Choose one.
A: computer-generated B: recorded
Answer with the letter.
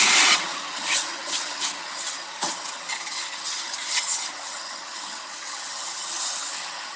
A